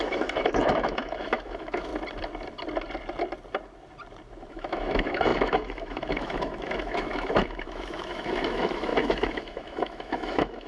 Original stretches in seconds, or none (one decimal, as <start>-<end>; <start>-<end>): 1.9-4.5